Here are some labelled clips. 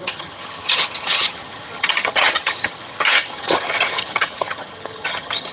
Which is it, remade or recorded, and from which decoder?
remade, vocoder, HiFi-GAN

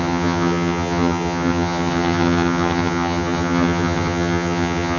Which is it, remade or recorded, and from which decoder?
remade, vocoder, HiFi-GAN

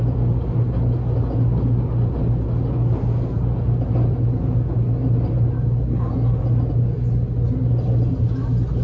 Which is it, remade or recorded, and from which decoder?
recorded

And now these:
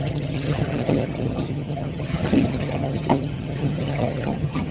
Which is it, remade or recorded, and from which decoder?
remade, vocoder, HiFi-GAN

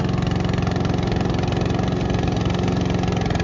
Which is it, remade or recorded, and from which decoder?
recorded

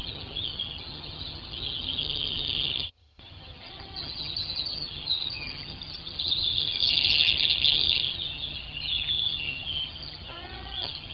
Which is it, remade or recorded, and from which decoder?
remade, vocoder, HiFi-GAN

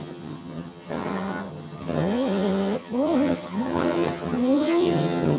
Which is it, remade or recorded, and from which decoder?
remade, vocoder, HiFi-GAN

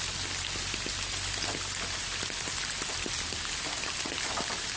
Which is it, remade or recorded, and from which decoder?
recorded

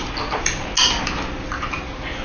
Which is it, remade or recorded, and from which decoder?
recorded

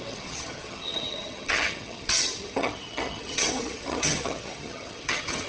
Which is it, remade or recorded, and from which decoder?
remade, vocoder, HiFi-GAN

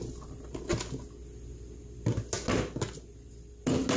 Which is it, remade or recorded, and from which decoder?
recorded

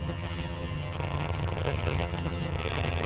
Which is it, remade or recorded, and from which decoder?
remade, vocoder, HiFi-GAN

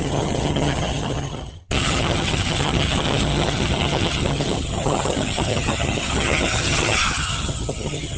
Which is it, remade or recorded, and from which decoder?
remade, vocoder, HiFi-GAN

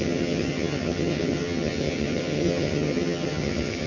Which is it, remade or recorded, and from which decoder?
remade, vocoder, HiFi-GAN